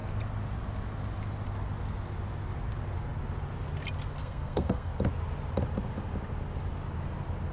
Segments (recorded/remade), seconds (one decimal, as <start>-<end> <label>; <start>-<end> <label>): 0.0-4.2 recorded; 4.2-4.9 remade; 4.9-7.5 recorded